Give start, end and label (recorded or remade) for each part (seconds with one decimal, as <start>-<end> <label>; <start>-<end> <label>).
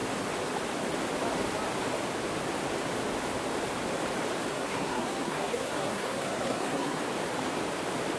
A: 0.0-4.5 recorded; 4.5-7.0 remade; 7.0-8.2 recorded